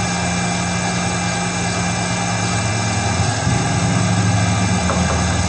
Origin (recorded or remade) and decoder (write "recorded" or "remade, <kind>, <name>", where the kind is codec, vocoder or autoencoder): recorded